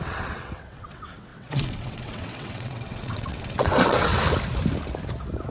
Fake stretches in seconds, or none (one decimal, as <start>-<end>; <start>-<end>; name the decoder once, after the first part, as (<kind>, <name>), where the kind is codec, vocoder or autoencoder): 0.0-4.1 (vocoder, WaveNeXt)